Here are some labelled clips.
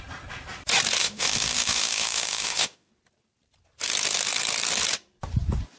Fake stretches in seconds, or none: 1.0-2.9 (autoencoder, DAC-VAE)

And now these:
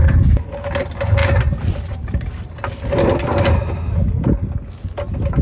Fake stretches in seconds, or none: none

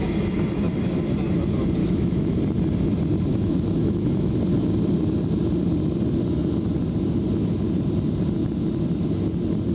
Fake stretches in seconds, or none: 1.8-2.4 (autoencoder, DAC-VAE); 3.3-4.4

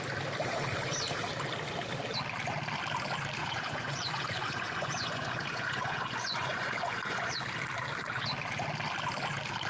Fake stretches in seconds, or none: 3.4-7.3 (vocoder, Vocos)

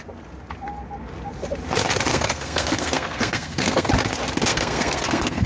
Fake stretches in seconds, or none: 2.1-3.9 (codec, SNAC); 4.5-5.5

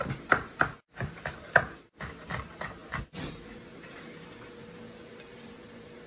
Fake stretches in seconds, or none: 0.0-2.8 (vocoder, BigVGAN v2); 3.3-6.1

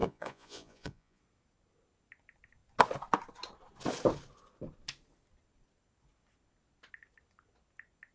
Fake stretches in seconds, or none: 0.0-1.2 (vocoder, Vocos)

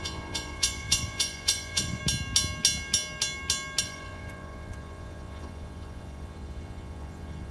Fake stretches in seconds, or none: 0.0-2.0 (vocoder, Vocos); 3.8-7.5